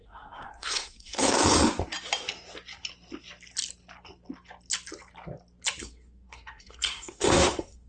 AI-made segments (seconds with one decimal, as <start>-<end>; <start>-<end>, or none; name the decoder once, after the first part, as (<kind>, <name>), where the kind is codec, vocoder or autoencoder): 0.0-1.4 (codec, SNAC); 5.8-7.9